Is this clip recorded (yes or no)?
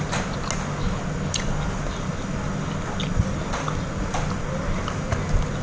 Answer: yes